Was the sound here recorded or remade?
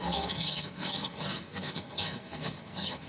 remade